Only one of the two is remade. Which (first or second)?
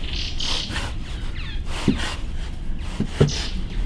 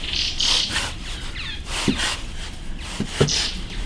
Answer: second